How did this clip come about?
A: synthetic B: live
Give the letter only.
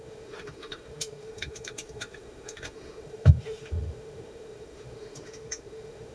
A